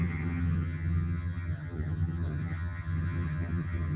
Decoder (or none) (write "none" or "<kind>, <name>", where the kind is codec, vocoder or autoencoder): vocoder, HiFi-GAN